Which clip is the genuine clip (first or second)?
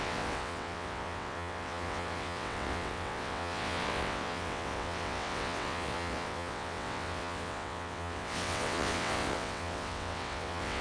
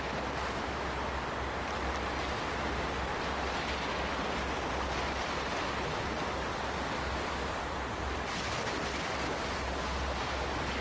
second